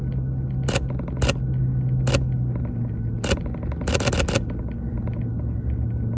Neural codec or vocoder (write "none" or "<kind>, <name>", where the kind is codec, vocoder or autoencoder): none